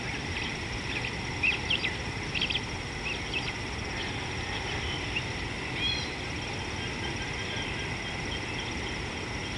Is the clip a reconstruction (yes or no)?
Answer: no